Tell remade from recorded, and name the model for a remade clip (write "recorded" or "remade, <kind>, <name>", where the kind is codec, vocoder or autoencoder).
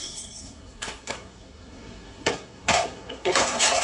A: remade, codec, SNAC